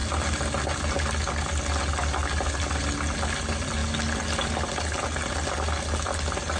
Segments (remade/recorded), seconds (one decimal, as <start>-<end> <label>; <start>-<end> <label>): 0.0-6.6 recorded